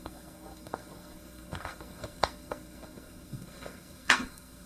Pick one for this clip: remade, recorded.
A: remade